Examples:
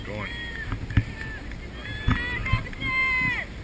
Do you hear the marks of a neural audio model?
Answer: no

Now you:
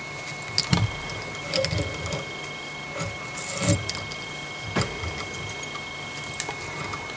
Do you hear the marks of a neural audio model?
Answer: no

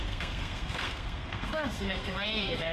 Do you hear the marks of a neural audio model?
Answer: yes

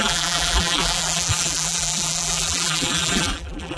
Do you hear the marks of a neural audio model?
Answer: yes